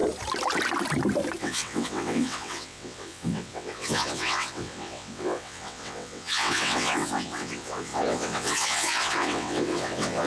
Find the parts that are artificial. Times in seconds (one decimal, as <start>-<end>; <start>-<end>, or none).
1.4-10.3